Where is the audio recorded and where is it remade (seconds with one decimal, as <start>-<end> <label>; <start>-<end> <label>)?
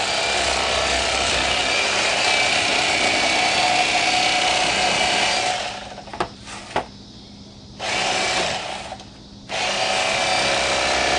0.0-11.2 recorded